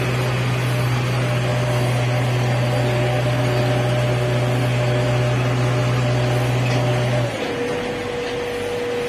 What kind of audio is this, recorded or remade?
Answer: recorded